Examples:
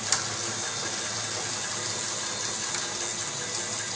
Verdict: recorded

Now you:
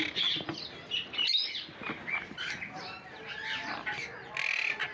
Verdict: recorded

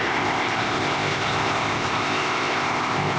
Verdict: remade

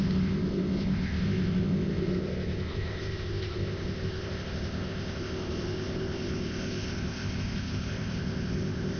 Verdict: remade